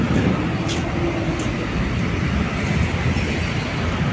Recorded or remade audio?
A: recorded